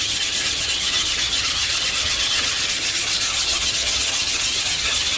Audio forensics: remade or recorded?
remade